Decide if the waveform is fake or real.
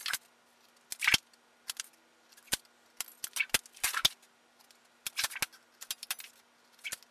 real